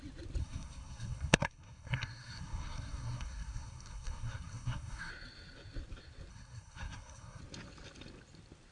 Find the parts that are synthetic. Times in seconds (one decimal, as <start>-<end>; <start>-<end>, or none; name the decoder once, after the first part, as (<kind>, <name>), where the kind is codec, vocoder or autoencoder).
0.4-5.1 (codec, SNAC); 6.3-7.4